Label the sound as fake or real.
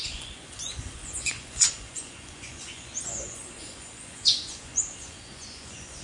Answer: fake